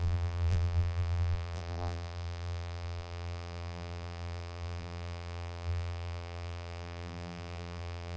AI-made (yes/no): yes